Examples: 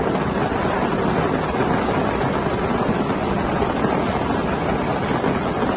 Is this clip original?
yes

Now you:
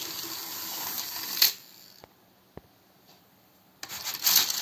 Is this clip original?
yes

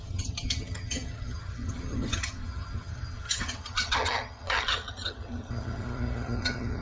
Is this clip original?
no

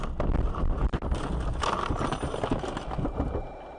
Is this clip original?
yes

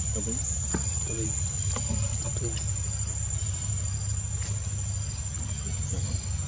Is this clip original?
yes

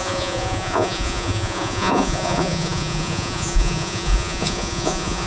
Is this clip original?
no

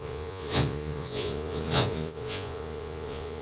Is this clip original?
no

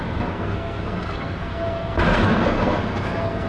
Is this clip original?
no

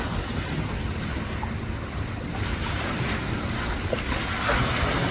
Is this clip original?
yes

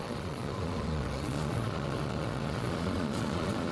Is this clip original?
no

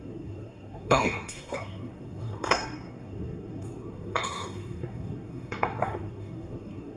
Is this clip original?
no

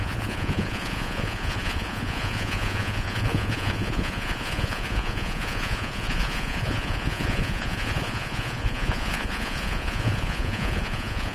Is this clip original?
no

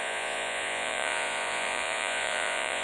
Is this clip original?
no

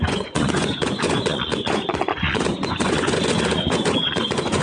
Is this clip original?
no